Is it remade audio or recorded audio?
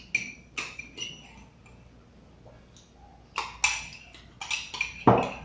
recorded